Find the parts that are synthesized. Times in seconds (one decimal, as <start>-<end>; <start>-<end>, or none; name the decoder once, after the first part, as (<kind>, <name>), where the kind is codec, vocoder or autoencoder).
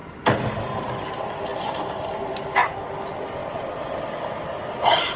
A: none